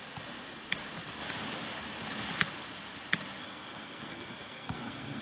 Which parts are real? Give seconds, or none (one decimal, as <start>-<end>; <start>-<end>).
0.0-3.4